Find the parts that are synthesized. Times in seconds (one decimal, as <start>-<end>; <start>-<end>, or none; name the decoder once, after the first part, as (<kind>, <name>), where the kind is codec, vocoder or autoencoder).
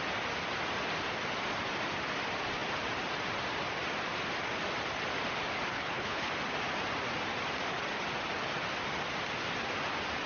5.7-6.3 (codec, HILCodec)